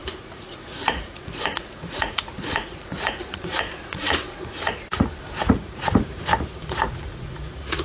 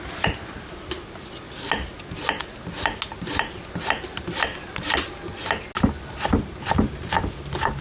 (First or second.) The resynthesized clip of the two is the first